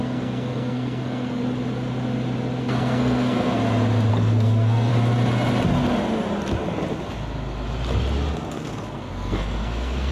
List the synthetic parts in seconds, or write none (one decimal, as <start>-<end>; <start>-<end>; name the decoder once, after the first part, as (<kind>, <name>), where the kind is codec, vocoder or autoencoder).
0.0-1.4 (codec, SNAC); 2.6-3.6; 4.1-4.9; 8.5-10.1